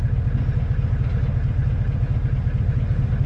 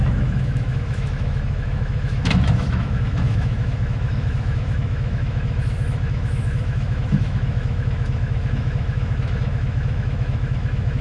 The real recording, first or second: first